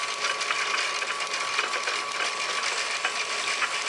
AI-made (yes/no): no